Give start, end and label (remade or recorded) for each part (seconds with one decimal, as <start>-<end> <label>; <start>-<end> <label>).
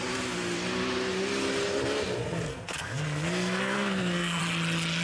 0.0-2.5 recorded; 2.5-4.4 remade; 4.4-5.0 recorded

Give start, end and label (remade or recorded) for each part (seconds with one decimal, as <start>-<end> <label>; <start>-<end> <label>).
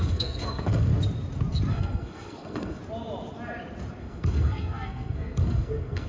0.0-0.9 remade; 0.9-1.7 recorded; 1.7-2.8 remade; 2.8-4.0 recorded; 4.0-6.1 remade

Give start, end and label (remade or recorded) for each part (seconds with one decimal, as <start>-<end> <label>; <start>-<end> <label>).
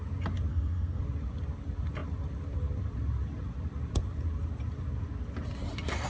0.0-0.5 recorded; 0.5-1.0 remade; 1.0-6.1 recorded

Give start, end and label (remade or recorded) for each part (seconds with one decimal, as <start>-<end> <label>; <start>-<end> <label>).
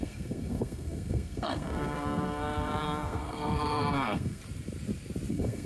0.0-4.4 remade; 4.4-5.3 recorded; 5.3-5.7 remade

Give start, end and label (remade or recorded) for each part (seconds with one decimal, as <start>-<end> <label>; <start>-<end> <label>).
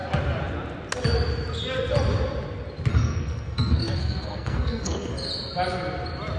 0.0-2.9 recorded; 2.9-5.1 remade; 5.1-6.4 recorded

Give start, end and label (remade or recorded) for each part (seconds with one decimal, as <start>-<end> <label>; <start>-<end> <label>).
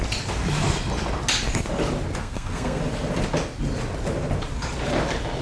0.0-2.2 recorded; 2.2-2.8 remade; 2.8-5.4 recorded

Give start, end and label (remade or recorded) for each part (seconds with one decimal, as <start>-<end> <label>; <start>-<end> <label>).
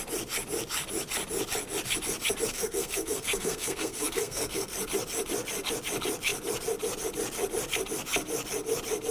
0.0-2.5 recorded; 2.5-4.7 remade; 4.7-9.1 recorded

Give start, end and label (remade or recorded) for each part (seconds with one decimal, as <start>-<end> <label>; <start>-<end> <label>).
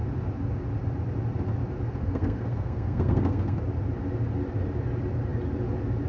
0.0-2.0 recorded; 2.0-3.6 remade; 3.6-6.1 recorded